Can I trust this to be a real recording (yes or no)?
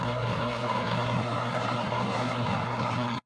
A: no